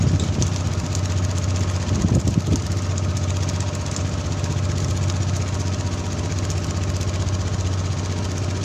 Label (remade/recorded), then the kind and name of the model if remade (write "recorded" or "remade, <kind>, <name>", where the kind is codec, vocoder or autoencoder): recorded